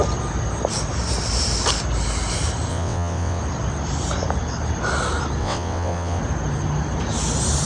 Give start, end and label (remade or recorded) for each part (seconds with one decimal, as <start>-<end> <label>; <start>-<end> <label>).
0.0-2.7 recorded; 2.7-3.4 remade; 3.4-5.4 recorded; 5.4-6.2 remade; 6.2-7.6 recorded